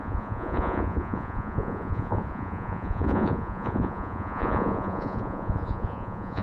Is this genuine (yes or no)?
no